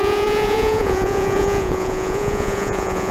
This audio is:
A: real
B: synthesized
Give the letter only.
B